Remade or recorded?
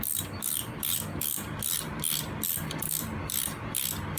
remade